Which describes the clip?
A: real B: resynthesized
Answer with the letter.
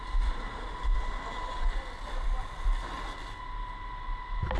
A